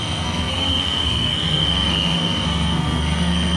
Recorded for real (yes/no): no